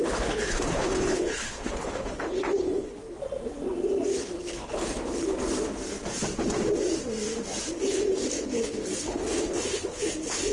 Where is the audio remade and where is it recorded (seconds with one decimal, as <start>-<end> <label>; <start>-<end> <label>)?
0.0-3.2 remade; 3.2-4.1 recorded; 4.1-5.4 remade; 5.4-7.7 recorded; 7.7-10.5 remade